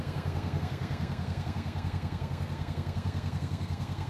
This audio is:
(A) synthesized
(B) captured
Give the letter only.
A